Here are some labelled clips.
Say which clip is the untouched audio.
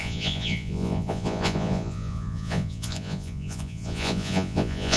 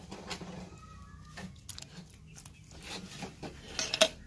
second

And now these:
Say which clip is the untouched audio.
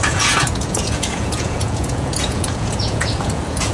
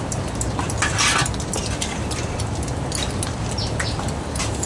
second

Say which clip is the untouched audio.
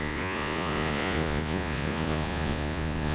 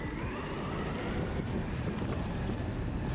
second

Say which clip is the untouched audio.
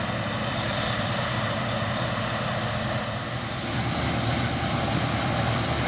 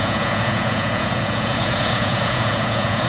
first